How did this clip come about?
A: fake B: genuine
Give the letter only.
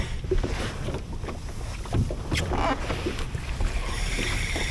B